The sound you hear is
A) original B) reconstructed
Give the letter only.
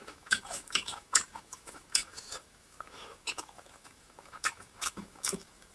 B